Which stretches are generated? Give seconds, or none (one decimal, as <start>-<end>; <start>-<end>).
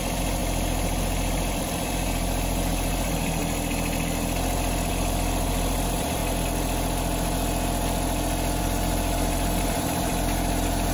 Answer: 0.0-3.4; 4.9-6.2; 8.6-10.9